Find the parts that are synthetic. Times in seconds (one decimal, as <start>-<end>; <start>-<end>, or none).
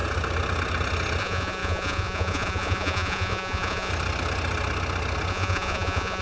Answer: 1.2-3.9; 5.3-6.2